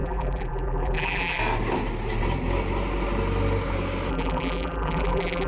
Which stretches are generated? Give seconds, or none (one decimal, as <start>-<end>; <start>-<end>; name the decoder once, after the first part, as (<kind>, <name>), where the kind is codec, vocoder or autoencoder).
0.0-1.4 (vocoder, BigVGAN v2); 4.1-5.5